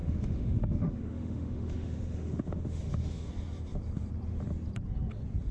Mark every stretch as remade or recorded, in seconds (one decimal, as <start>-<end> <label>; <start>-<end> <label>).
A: 0.0-3.3 remade; 3.3-5.5 recorded